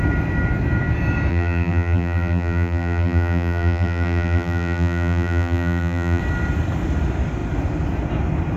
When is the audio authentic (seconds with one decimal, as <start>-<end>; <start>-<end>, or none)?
0.0-1.3; 6.2-8.6